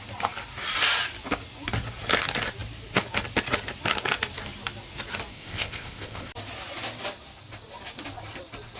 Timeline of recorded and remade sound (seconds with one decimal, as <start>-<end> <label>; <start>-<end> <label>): 0.0-5.3 recorded; 5.3-6.3 remade; 6.3-8.8 recorded